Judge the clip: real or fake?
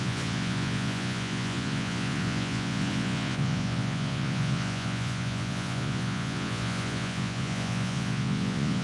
fake